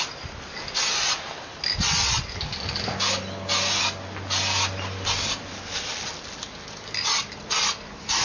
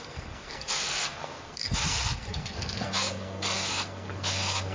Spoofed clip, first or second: second